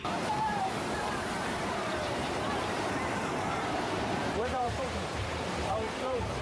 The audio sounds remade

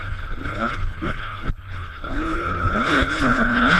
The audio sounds remade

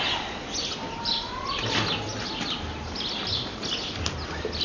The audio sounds recorded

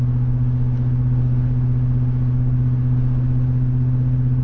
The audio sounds recorded